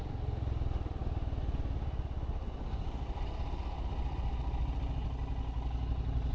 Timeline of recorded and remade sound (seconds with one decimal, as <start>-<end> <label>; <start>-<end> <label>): 0.0-6.3 recorded